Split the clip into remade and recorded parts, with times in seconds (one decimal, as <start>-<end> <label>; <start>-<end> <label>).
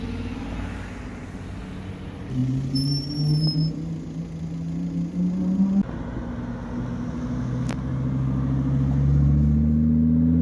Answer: 0.0-10.4 recorded